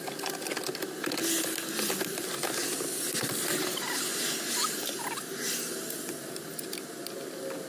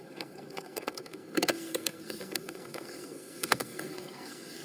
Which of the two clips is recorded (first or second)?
first